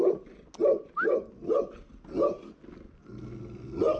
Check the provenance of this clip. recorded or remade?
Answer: recorded